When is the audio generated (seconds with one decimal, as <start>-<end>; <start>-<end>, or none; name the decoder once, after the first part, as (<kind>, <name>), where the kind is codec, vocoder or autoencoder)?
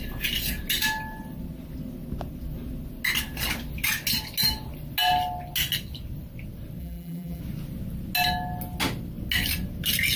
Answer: 6.8-7.4 (vocoder, BigVGAN v2)